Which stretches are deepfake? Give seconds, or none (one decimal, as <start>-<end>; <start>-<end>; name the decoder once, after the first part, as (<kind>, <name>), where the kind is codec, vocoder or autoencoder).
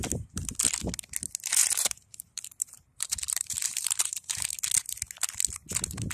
1.6-4.5 (vocoder, BigVGAN v2)